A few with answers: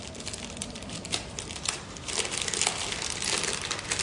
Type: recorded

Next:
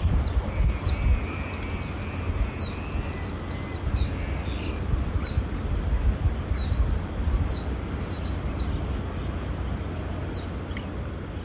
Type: recorded